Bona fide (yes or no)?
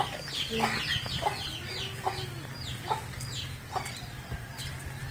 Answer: yes